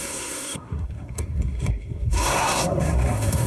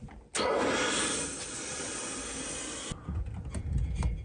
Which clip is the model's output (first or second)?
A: first